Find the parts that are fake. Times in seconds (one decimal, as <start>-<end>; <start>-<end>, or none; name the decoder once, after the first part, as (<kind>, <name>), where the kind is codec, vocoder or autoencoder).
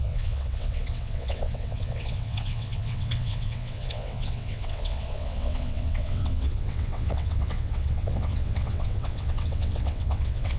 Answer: 0.0-10.6 (vocoder, WaveNeXt)